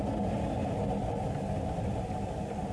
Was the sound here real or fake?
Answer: real